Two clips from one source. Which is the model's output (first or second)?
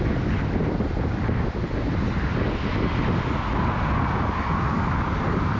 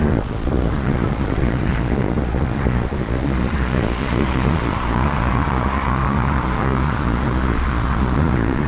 second